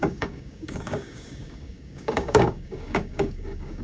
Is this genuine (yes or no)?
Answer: no